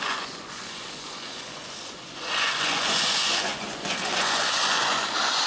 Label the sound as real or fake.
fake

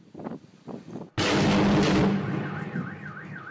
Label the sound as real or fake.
real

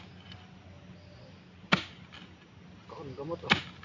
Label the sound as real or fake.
real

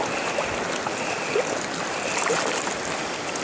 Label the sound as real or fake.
real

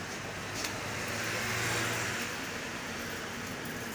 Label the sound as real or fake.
real